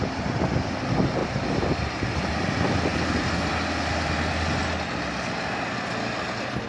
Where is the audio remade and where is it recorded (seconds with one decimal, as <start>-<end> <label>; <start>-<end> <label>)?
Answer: 0.0-1.2 recorded; 1.2-2.3 remade; 2.3-6.7 recorded